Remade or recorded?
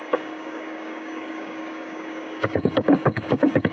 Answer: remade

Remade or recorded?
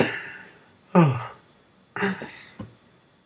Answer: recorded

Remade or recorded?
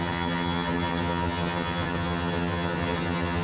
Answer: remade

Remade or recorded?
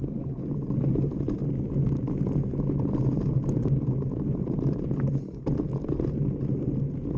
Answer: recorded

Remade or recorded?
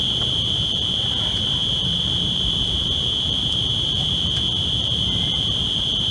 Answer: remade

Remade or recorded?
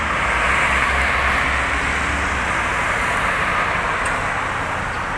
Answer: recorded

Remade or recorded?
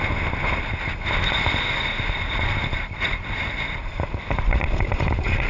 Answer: recorded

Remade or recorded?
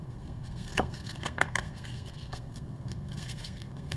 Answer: remade